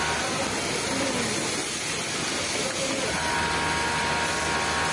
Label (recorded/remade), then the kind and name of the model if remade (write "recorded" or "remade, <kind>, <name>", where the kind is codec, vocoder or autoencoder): recorded